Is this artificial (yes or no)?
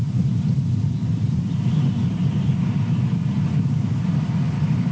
no